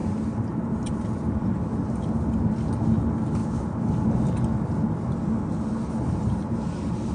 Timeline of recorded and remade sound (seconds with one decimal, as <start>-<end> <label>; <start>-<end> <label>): 0.0-2.3 remade; 2.3-7.1 recorded